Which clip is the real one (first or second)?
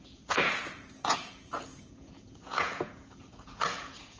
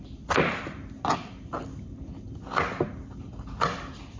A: second